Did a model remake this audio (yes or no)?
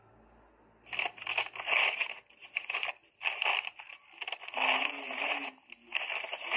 no